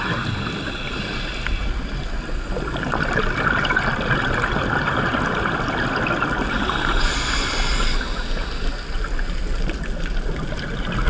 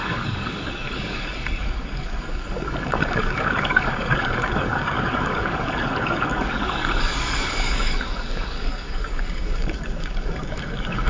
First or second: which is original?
first